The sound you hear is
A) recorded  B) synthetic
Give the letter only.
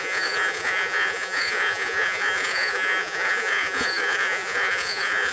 B